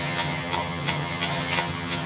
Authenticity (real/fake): fake